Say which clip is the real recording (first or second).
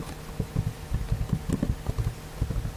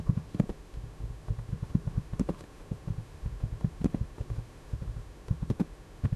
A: first